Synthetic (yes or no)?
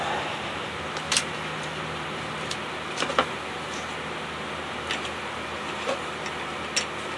no